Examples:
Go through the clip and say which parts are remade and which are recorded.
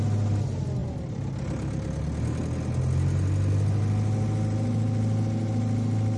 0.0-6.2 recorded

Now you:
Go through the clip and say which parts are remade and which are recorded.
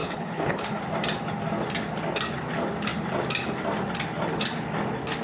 0.0-0.8 remade; 0.8-5.2 recorded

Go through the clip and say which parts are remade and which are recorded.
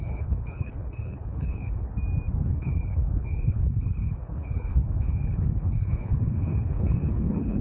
0.0-1.9 remade; 1.9-2.4 recorded; 2.4-7.6 remade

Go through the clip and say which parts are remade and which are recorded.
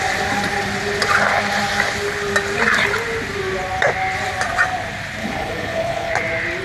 0.0-5.2 recorded; 5.2-6.1 remade; 6.1-6.6 recorded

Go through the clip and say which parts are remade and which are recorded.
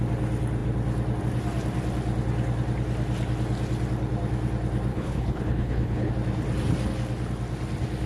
0.0-4.9 recorded; 4.9-6.1 remade; 6.1-8.1 recorded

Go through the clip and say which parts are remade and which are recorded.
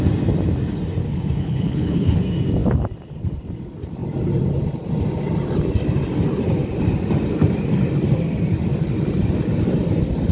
0.0-1.0 recorded; 1.0-2.2 remade; 2.2-10.3 recorded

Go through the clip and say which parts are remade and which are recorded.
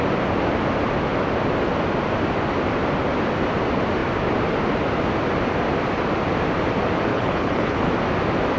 0.0-7.1 recorded; 7.1-7.9 remade; 7.9-8.6 recorded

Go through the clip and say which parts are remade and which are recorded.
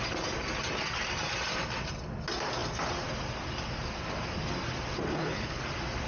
0.0-5.1 recorded; 5.1-5.6 remade; 5.6-6.1 recorded